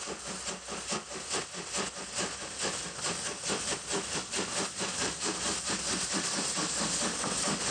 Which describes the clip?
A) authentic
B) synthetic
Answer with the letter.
A